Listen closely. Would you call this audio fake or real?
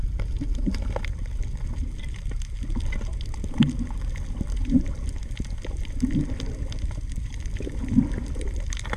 real